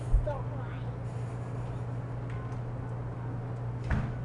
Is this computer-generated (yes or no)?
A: no